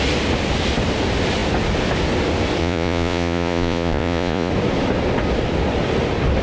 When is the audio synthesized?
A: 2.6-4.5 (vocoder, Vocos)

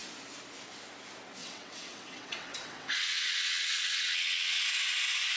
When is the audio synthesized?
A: 1.4-4.6 (vocoder, WaveNeXt)

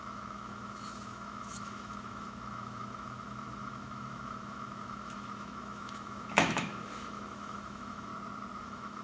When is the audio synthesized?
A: 0.0-8.1 (autoencoder, DAC-VAE); 8.6-9.0

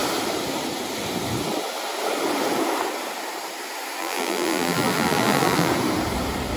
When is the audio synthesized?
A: 4.0-5.7 (vocoder, BigVGAN v2)

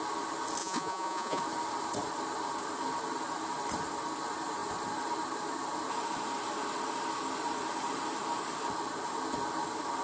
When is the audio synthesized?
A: 0.6-1.4 (vocoder, Vocos)